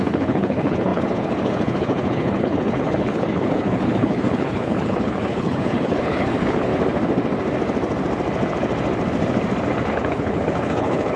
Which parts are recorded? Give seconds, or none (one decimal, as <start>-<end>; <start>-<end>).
6.7-9.9